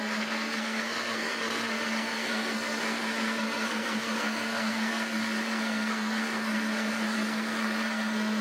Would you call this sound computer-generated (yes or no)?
yes